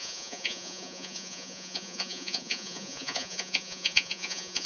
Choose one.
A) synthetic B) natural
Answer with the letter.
A